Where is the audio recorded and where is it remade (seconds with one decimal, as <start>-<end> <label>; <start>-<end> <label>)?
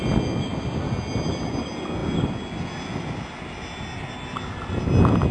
0.0-5.3 recorded